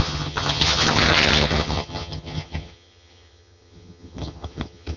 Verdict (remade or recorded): remade